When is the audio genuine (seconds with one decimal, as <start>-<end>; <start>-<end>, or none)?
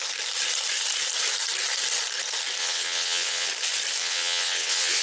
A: 0.0-2.6; 3.5-4.0